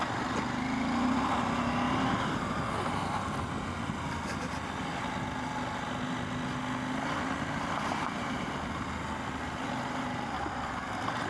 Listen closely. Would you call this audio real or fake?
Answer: real